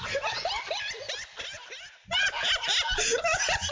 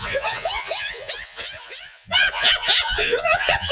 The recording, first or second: first